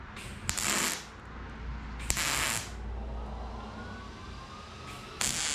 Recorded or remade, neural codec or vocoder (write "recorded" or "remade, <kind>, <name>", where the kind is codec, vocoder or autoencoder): recorded